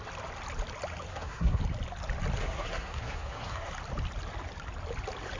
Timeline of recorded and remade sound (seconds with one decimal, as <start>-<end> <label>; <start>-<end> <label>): 0.0-1.1 recorded; 1.1-1.6 remade; 1.6-2.4 recorded; 2.4-3.7 remade; 3.7-5.4 recorded